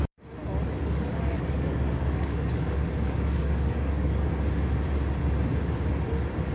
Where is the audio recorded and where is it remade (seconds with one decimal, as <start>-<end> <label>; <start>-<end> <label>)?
0.0-0.4 recorded; 0.4-4.3 remade; 4.3-6.5 recorded